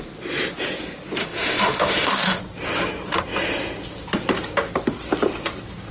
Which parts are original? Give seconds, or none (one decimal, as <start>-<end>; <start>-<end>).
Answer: 0.0-1.2; 2.4-5.9